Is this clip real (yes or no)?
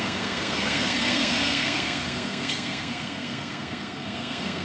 no